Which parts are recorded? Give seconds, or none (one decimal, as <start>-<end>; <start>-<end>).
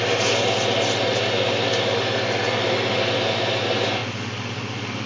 0.0-5.1